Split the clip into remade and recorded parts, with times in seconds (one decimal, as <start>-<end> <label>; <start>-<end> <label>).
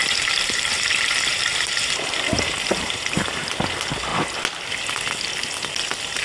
0.0-3.5 remade; 3.5-6.2 recorded